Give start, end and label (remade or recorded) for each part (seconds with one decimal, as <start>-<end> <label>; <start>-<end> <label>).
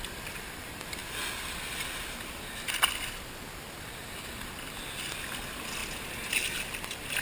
0.0-7.2 recorded